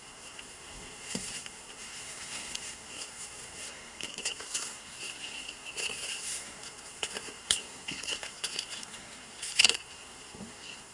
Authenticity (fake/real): fake